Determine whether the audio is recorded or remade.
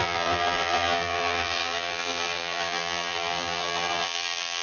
remade